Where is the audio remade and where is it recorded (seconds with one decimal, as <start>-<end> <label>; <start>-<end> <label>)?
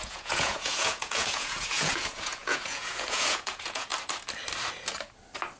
0.0-3.9 remade; 3.9-5.6 recorded